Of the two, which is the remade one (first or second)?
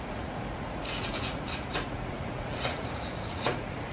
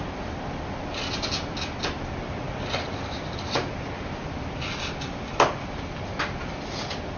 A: first